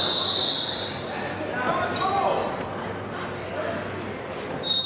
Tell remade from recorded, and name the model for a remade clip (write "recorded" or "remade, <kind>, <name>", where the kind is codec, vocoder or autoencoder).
recorded